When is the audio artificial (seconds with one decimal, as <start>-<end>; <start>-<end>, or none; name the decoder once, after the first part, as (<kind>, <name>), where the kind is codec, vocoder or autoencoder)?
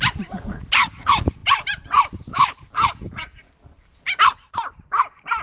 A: none